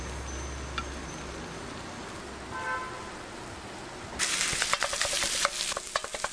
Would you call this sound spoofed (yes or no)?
no